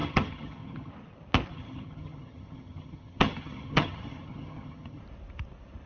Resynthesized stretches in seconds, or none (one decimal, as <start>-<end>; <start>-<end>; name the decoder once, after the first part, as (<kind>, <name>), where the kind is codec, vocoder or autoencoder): 0.0-0.9 (vocoder, HiFi-GAN); 1.5-5.0